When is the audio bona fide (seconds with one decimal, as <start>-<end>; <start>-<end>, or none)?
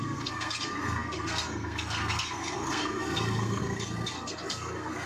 none